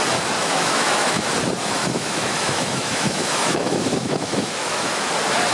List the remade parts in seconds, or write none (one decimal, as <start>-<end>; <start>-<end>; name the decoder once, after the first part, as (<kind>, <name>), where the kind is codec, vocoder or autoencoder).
0.4-1.3 (autoencoder, DAC-VAE); 1.8-5.1